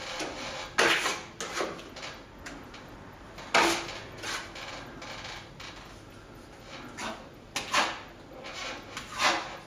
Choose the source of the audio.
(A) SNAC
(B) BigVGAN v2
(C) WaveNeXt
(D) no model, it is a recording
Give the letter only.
D